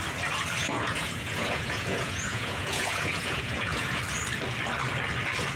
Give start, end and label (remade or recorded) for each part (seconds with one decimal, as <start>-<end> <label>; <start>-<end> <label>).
0.0-0.6 recorded; 0.6-4.0 remade; 4.0-5.6 recorded

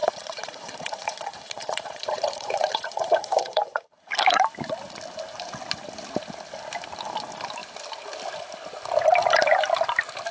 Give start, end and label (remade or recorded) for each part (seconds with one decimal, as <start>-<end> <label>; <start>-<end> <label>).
0.0-4.1 remade; 4.1-10.3 recorded

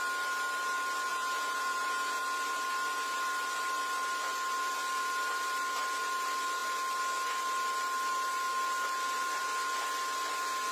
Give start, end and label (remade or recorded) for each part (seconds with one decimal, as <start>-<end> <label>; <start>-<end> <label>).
0.0-1.1 recorded; 1.1-2.2 remade; 2.2-10.7 recorded

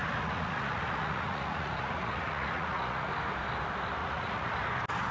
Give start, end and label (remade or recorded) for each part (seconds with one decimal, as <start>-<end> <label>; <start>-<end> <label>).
0.0-3.1 remade; 3.1-4.0 recorded; 4.0-4.5 remade; 4.5-5.1 recorded

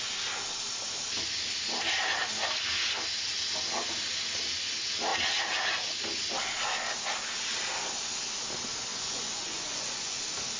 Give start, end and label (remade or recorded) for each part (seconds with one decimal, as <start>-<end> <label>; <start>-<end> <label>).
0.0-8.9 recorded; 8.9-10.2 remade; 10.2-10.6 recorded

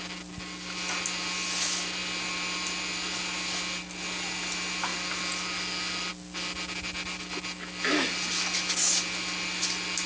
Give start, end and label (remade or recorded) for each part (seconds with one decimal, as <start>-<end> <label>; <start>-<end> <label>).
0.0-10.1 recorded